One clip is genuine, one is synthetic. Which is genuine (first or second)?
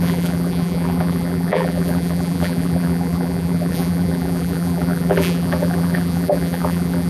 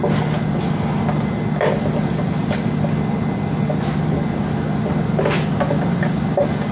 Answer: second